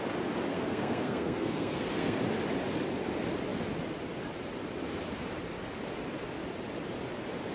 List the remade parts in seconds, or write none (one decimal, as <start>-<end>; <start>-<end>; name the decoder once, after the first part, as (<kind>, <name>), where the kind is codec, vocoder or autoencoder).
0.5-2.2 (codec, SNAC)